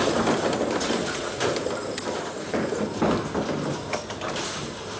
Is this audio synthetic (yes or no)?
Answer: no